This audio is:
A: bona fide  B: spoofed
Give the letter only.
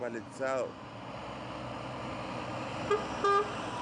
A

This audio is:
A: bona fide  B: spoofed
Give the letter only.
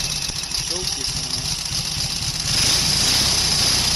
A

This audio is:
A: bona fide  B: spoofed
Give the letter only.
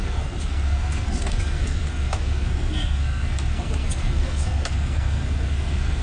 B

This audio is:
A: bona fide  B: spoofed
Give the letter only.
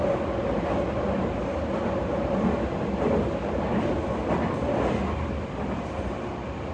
A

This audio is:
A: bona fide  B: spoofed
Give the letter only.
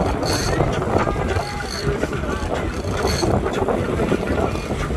A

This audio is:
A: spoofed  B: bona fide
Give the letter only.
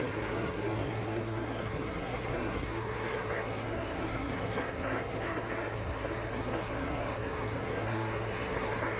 A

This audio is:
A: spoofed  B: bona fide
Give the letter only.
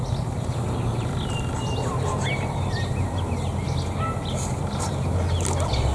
B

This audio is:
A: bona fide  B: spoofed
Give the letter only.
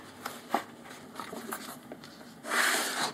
A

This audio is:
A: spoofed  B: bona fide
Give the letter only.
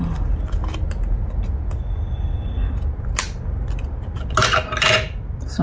B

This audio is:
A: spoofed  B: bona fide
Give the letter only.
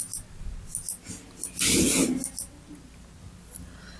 B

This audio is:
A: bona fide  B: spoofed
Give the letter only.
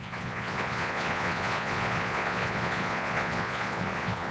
B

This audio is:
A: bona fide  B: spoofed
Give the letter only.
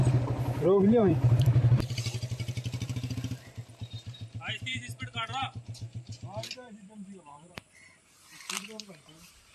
B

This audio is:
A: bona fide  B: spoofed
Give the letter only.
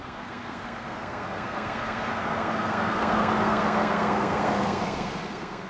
B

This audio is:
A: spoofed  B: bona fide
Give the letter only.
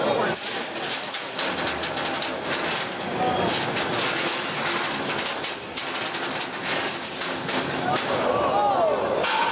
B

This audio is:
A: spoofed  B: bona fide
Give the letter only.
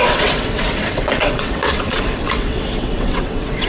A